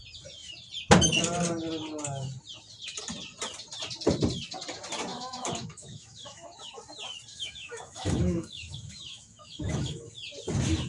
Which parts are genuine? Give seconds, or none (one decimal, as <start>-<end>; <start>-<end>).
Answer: 0.0-5.1; 6.8-7.3; 10.1-10.9